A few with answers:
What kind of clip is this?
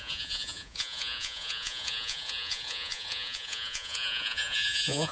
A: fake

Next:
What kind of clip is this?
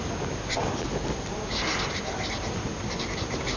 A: real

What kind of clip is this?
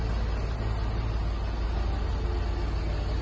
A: real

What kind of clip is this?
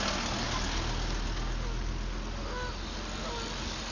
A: real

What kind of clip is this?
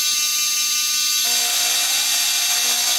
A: real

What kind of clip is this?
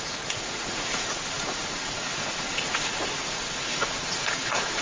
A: fake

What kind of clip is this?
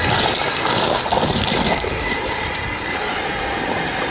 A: real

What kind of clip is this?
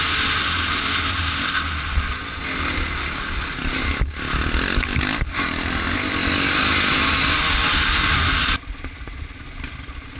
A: real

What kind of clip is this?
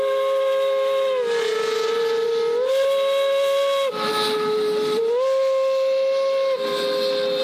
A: real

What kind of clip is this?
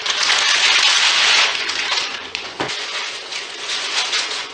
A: fake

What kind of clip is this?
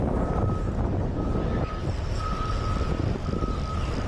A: real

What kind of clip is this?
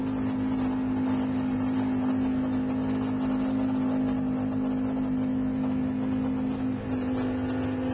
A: real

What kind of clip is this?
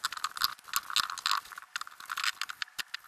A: real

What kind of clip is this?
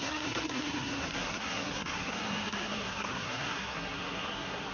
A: fake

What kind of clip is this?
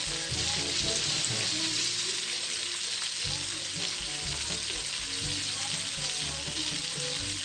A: real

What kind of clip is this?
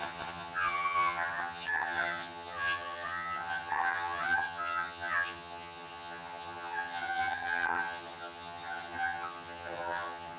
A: fake